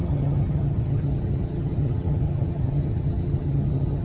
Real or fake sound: fake